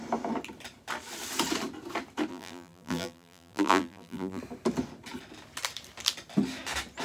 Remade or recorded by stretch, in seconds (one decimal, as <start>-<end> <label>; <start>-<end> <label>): 0.0-2.3 recorded; 2.3-4.4 remade; 4.4-7.0 recorded